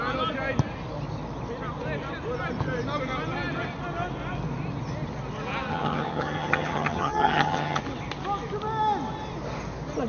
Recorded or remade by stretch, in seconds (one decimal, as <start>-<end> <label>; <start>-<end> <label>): 0.0-5.7 recorded; 5.7-7.8 remade; 7.8-10.1 recorded

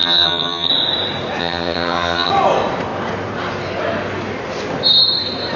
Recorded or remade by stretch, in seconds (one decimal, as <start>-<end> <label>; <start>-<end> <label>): 0.0-0.7 remade; 0.7-1.4 recorded; 1.4-2.3 remade; 2.3-5.6 recorded

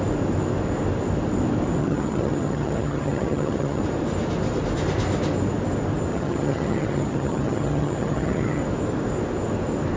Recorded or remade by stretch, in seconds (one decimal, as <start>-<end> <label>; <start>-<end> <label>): 0.0-1.8 recorded; 1.8-3.8 remade; 3.8-6.1 recorded; 6.1-8.6 remade; 8.6-10.0 recorded

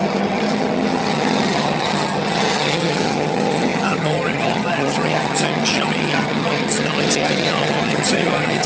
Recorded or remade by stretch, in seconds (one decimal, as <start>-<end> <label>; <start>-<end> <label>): 0.0-8.7 remade

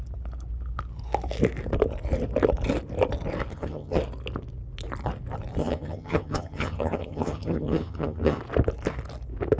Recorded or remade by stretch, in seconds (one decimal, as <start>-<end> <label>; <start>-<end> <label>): 0.0-3.5 recorded; 3.5-4.0 remade; 4.0-5.6 recorded; 5.6-8.4 remade; 8.4-9.6 recorded

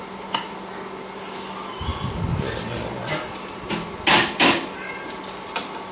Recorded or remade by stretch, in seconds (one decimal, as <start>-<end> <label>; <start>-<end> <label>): 0.0-5.9 recorded